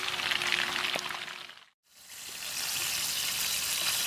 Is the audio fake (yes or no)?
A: no